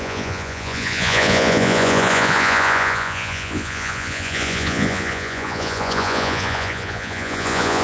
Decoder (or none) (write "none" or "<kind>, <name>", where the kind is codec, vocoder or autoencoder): vocoder, Vocos